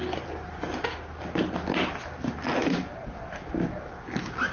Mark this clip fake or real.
real